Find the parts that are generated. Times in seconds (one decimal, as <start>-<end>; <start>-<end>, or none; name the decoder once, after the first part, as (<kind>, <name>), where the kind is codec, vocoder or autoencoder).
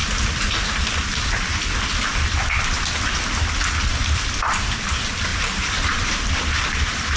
5.3-6.3 (vocoder, BigVGAN v2)